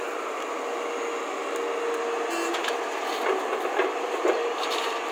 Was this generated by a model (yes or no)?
no